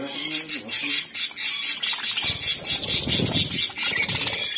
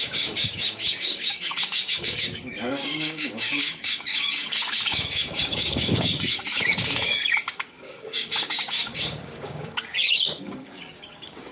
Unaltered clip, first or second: first